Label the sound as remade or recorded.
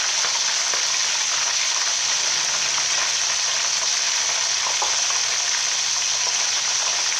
recorded